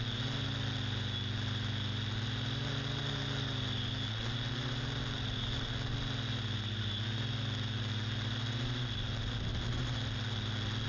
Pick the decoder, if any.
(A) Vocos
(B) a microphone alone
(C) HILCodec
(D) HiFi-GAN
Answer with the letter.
B